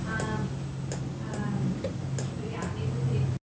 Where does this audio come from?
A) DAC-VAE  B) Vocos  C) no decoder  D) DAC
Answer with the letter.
C